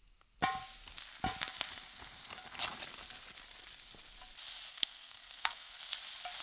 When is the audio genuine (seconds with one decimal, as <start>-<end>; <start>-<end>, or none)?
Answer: 0.0-4.7; 5.8-6.4